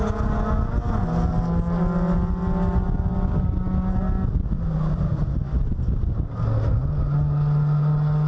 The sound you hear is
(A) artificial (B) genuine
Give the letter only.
B